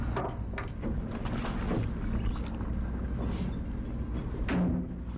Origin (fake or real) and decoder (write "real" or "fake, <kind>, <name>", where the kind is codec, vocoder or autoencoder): real